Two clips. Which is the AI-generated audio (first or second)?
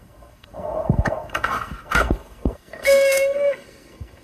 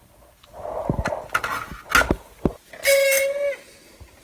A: first